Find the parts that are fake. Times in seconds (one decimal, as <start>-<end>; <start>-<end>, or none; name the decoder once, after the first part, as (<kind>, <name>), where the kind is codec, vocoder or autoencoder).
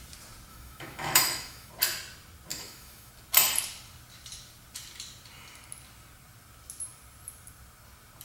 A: 0.5-1.7 (autoencoder, DAC-VAE); 2.5-3.1